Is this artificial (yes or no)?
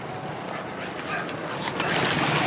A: no